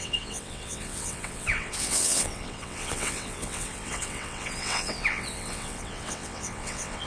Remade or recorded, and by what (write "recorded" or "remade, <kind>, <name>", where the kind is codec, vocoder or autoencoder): remade, vocoder, WaveNeXt